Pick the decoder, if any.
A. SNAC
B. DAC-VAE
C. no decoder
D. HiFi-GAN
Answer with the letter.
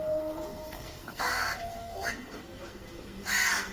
A